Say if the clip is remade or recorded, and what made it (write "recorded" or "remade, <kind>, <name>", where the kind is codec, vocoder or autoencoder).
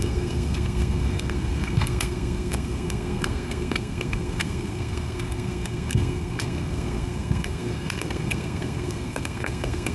remade, codec, SNAC